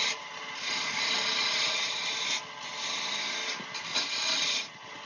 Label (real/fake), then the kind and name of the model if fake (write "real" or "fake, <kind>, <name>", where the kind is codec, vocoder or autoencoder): real